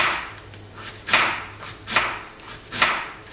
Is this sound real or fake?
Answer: real